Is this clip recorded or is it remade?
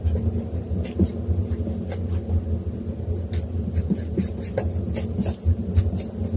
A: recorded